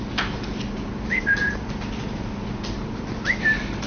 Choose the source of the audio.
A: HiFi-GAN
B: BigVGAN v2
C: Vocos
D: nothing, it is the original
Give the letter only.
D